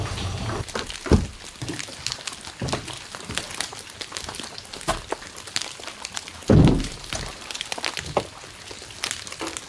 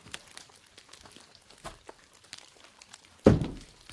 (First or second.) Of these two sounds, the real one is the first